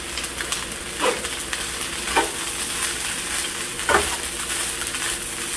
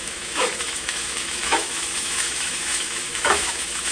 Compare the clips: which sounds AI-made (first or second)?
second